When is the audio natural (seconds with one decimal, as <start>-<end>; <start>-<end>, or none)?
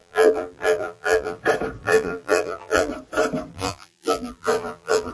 1.4-1.8; 2.9-3.5